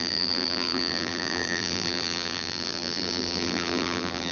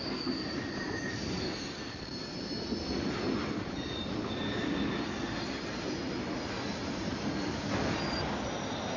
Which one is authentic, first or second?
second